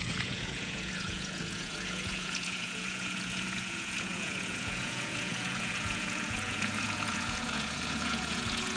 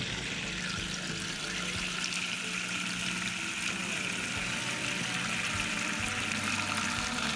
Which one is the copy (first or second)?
first